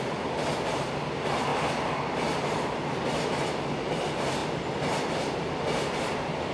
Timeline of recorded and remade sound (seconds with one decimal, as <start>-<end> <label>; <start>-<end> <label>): 0.0-6.5 recorded